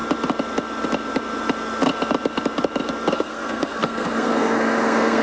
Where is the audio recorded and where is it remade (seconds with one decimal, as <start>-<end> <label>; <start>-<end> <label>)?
0.0-3.1 recorded; 3.1-5.2 remade